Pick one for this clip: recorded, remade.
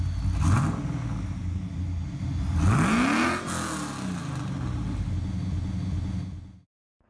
recorded